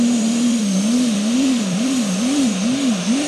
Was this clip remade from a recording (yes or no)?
yes